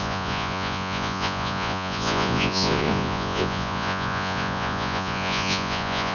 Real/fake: fake